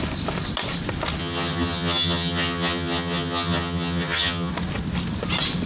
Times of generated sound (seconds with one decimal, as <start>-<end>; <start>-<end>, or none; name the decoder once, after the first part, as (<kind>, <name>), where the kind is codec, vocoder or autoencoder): 1.2-4.5 (vocoder, HiFi-GAN)